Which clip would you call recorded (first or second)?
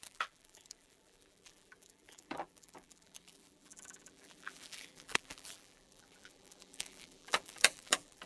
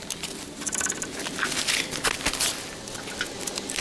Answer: second